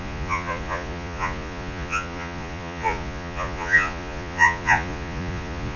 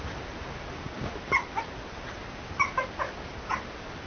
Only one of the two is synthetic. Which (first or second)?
first